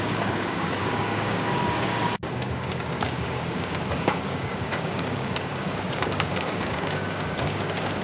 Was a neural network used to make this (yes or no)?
yes